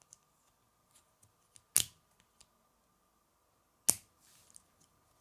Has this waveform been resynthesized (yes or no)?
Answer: no